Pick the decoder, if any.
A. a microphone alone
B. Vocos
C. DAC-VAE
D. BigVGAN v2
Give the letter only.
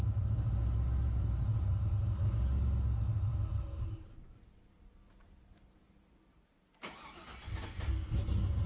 A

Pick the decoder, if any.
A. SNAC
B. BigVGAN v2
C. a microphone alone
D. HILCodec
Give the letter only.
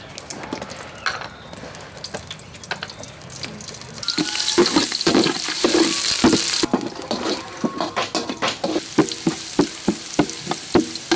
C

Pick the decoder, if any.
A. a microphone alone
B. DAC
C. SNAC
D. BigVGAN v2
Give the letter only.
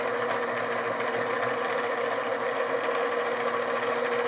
A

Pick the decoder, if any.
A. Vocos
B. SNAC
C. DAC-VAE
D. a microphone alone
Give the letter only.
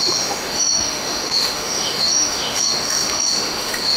C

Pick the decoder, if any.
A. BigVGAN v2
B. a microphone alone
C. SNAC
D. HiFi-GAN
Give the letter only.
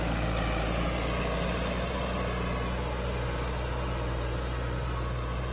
B